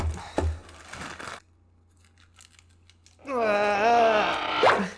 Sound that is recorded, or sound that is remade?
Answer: recorded